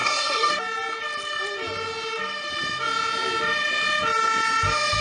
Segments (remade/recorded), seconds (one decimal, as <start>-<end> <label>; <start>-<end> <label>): 0.0-0.5 remade; 0.5-5.0 recorded